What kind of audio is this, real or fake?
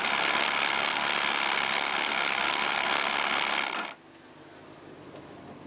real